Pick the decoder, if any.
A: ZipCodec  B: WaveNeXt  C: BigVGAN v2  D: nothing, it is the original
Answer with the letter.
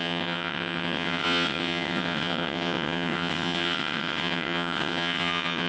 B